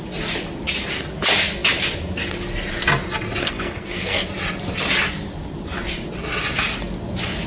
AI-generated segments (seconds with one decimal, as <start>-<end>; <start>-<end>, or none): 3.4-4.3